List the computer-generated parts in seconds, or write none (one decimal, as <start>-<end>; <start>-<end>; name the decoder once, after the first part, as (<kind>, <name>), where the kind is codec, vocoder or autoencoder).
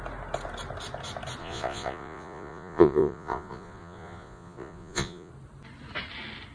1.4-5.3 (vocoder, Vocos)